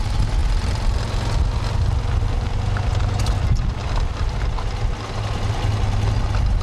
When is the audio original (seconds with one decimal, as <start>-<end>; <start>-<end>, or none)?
0.0-6.6